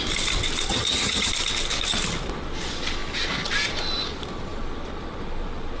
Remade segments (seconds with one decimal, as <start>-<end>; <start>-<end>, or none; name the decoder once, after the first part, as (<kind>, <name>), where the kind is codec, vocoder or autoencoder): 0.7-1.3 (vocoder, HiFi-GAN)